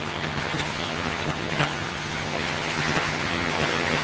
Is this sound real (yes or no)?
no